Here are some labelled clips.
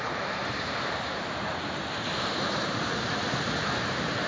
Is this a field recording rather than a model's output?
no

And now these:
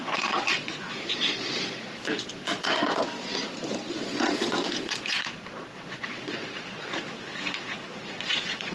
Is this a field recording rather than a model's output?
no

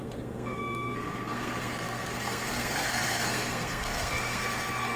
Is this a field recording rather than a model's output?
no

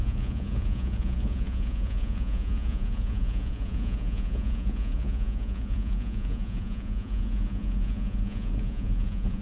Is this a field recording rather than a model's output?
no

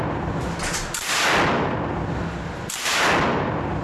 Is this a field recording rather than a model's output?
yes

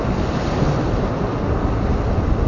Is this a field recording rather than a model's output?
yes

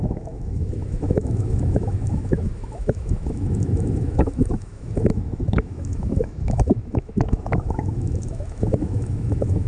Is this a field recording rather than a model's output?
no